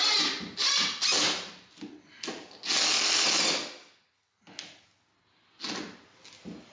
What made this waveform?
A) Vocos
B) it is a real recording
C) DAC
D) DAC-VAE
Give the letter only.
B